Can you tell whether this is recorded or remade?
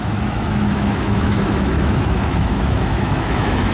remade